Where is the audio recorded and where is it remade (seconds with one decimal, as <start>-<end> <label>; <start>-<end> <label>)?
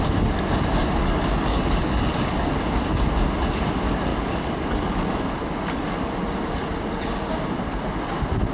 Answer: 0.0-1.0 recorded; 1.0-2.5 remade; 2.5-4.1 recorded; 4.1-6.1 remade; 6.1-8.5 recorded